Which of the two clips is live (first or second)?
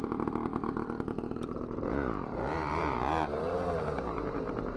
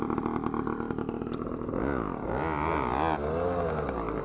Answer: second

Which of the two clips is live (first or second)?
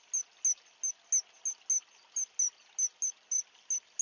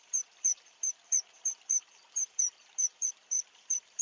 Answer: first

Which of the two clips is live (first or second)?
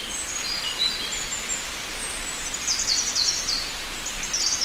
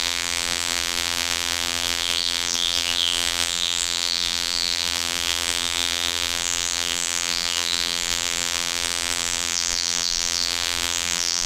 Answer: first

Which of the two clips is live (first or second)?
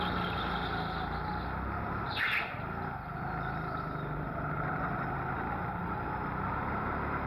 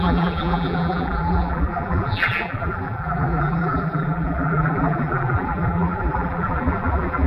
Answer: first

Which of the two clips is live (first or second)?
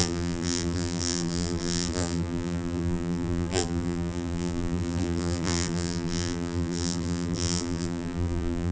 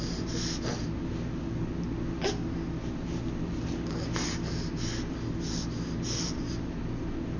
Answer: second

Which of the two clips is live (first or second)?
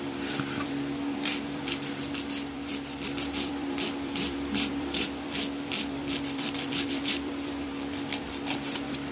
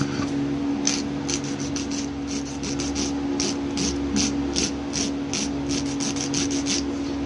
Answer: second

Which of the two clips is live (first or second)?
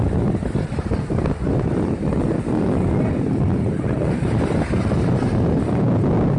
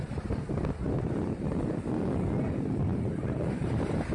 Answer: first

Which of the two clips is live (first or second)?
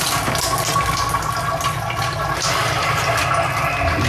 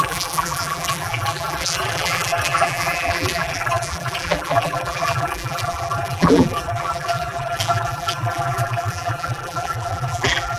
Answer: first